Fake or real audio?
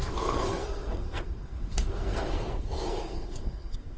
fake